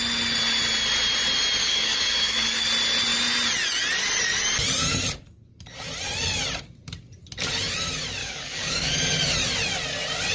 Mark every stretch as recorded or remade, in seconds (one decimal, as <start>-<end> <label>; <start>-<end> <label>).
0.0-1.6 recorded; 1.6-2.7 remade; 2.7-8.2 recorded; 8.2-9.0 remade; 9.0-10.3 recorded